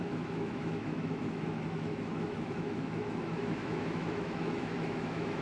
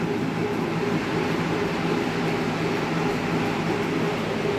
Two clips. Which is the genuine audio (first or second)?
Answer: second